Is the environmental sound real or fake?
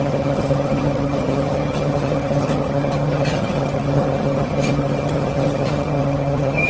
fake